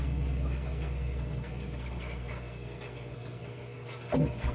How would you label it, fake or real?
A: fake